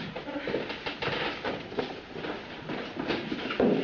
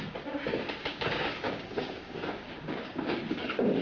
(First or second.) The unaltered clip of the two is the first